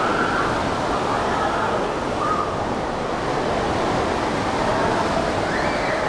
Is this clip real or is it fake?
real